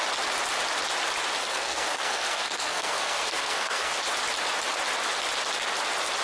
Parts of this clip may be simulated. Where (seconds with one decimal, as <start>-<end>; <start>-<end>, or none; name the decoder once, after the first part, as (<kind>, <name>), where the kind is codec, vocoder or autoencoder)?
1.4-3.9 (codec, SNAC)